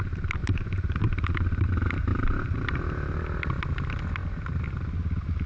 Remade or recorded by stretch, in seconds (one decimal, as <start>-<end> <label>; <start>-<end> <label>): 0.0-0.4 recorded; 0.4-1.7 remade; 1.7-2.1 recorded; 2.1-2.8 remade; 2.8-5.5 recorded